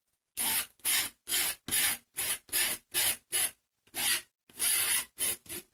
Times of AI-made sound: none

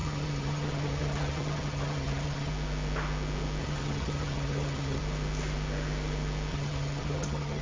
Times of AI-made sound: 0.0-2.5; 3.6-5.0; 6.5-7.6

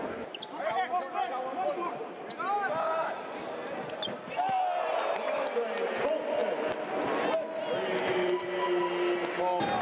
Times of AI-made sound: none

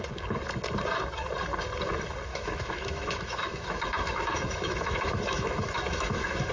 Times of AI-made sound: 2.3-6.5

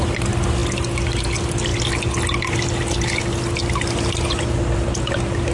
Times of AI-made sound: none